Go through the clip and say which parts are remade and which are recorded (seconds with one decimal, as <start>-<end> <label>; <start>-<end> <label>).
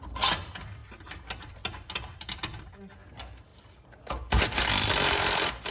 0.0-5.7 recorded